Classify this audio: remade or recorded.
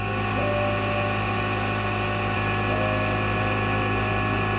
recorded